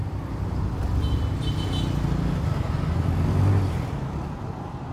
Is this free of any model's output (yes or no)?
yes